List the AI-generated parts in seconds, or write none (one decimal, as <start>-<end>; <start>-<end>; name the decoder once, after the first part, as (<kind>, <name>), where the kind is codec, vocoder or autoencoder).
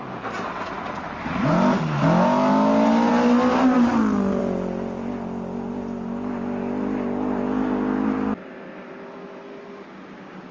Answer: none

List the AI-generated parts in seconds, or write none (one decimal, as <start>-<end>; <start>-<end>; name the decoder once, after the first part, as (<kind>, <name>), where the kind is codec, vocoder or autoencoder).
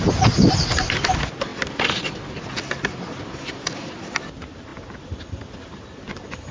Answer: none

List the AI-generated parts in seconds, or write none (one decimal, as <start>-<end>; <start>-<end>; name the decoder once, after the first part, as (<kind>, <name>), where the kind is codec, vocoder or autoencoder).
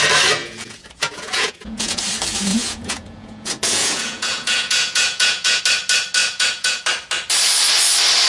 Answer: 0.4-2.0 (vocoder, Vocos); 2.5-5.6; 6.2-6.8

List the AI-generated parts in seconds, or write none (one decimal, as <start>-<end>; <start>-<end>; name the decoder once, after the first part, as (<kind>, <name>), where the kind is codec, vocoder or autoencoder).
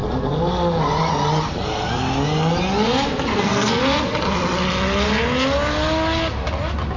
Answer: 3.3-3.8 (codec, SNAC)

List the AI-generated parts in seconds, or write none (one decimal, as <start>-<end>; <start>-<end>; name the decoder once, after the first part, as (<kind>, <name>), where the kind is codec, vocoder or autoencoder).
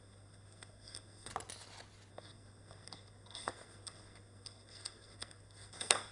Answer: 0.0-1.3 (codec, SNAC); 2.1-6.1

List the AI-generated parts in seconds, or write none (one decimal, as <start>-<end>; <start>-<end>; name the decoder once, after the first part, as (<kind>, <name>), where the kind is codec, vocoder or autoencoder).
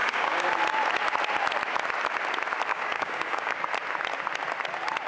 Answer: 0.0-0.5 (codec, DAC); 2.7-3.6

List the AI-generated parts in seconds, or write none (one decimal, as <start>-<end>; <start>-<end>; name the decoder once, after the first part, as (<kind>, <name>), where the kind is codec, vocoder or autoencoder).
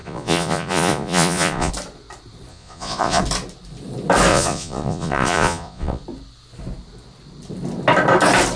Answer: 0.0-1.7 (vocoder, Vocos); 2.5-3.2; 4.3-6.0